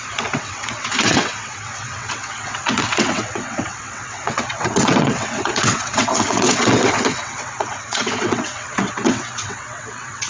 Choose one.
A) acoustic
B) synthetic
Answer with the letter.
B